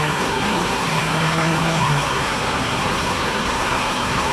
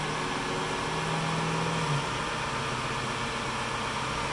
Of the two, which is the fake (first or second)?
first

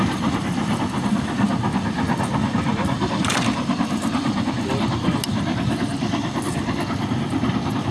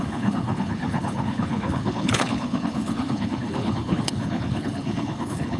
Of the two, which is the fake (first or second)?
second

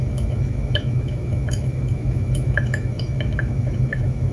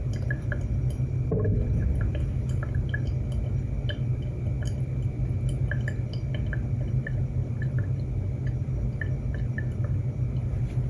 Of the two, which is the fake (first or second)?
first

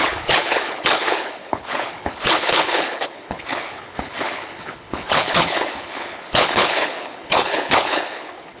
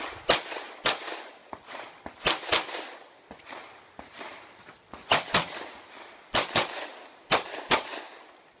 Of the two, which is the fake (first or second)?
first